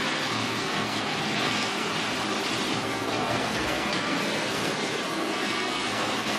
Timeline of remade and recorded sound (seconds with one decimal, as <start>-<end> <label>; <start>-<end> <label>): 0.0-1.9 remade; 1.9-2.7 recorded; 2.7-6.4 remade